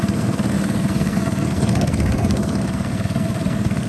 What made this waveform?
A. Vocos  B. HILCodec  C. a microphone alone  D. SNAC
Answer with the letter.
D